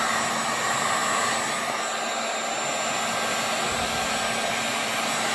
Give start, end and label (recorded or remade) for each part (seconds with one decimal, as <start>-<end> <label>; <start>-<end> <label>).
0.0-5.3 recorded